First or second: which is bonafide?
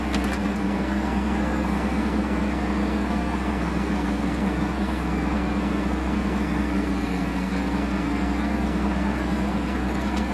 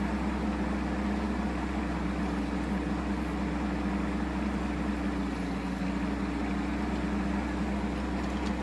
second